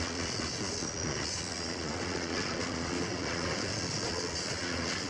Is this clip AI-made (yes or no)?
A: yes